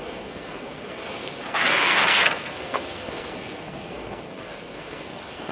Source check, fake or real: fake